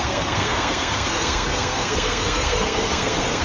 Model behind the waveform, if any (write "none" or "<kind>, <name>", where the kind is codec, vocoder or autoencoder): codec, SNAC